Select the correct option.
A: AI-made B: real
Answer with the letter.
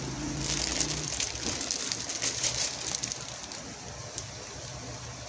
A